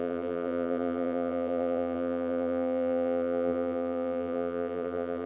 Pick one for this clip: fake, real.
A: fake